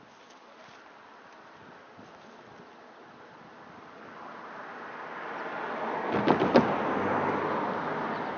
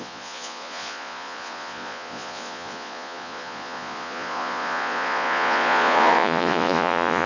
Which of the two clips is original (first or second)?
first